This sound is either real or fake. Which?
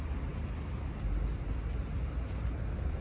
real